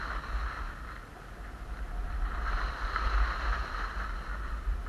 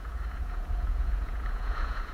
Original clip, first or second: first